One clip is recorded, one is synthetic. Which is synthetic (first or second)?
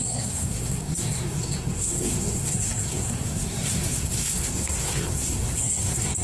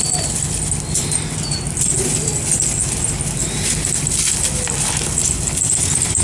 first